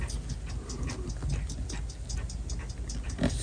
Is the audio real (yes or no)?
yes